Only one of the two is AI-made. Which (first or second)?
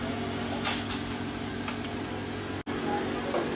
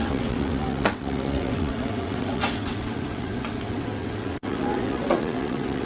second